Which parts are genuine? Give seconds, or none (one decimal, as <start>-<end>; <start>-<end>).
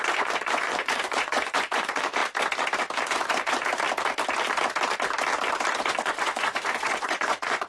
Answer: 2.2-3.1; 3.6-5.8